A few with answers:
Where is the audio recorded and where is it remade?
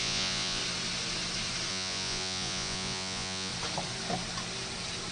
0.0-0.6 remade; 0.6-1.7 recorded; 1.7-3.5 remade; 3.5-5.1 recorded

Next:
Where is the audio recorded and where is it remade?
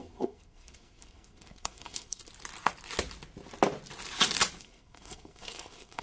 0.0-2.2 remade; 2.2-4.6 recorded; 4.6-6.0 remade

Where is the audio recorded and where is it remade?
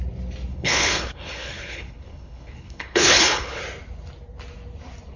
0.0-0.5 recorded; 0.5-3.6 remade; 3.6-5.2 recorded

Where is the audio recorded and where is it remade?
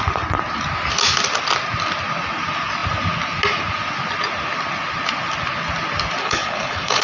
0.0-6.2 recorded; 6.2-7.0 remade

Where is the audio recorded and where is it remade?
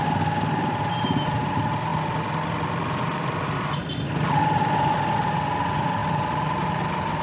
0.0-7.2 recorded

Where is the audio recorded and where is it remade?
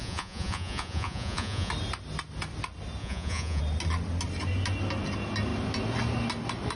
0.0-1.7 remade; 1.7-3.0 recorded; 3.0-3.6 remade; 3.6-6.8 recorded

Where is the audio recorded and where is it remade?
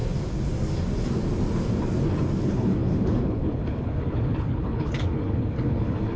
0.0-2.4 recorded; 2.4-6.2 remade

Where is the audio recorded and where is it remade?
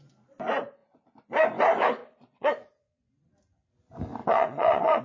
0.0-2.0 recorded; 2.0-3.1 remade; 3.1-4.2 recorded; 4.2-5.0 remade